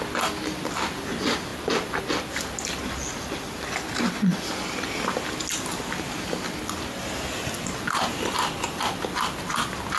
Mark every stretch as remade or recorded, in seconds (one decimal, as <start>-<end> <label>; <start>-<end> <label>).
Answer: 0.0-10.0 recorded

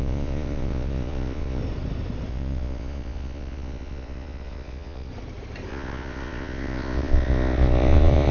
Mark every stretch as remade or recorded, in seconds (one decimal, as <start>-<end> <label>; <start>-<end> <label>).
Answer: 0.0-1.6 remade; 1.6-2.3 recorded; 2.3-5.1 remade; 5.1-5.7 recorded; 5.7-8.3 remade

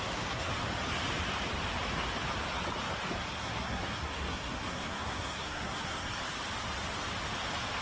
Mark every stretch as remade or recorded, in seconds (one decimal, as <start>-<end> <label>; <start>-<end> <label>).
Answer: 0.0-0.5 remade; 0.5-3.2 recorded; 3.2-6.2 remade; 6.2-7.8 recorded

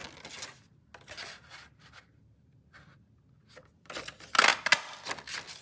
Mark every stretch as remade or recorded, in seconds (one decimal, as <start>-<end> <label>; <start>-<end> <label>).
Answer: 0.0-5.6 recorded